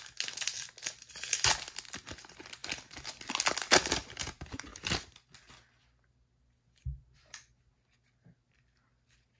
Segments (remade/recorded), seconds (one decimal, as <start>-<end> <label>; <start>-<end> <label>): 0.0-9.4 recorded